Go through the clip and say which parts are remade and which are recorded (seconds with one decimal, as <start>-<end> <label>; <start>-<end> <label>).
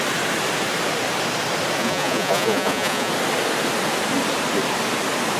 0.0-1.8 recorded; 1.8-3.1 remade; 3.1-5.4 recorded